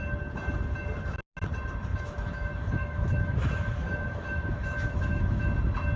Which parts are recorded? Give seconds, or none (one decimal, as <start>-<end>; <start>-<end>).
0.0-1.9; 5.5-6.0